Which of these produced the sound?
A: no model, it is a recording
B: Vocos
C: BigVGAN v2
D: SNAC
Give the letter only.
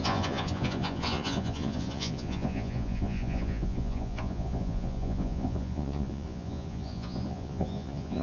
B